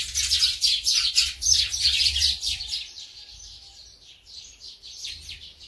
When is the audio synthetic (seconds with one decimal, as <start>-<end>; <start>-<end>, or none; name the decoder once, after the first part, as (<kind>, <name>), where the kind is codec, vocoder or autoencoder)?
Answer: 0.5-1.1 (vocoder, BigVGAN v2); 2.0-5.1